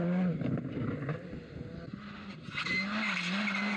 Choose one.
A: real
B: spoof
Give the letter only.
A